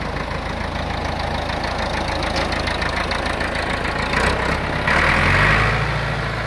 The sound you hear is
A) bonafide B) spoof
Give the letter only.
A